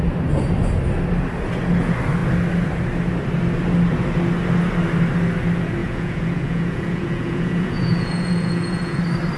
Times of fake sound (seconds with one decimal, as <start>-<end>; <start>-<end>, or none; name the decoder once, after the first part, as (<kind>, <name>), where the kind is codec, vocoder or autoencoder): 5.8-9.0 (vocoder, Vocos)